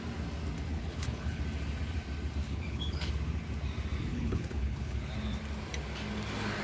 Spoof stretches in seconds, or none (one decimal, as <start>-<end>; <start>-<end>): 0.7-1.4; 2.4-3.1; 4.1-5.1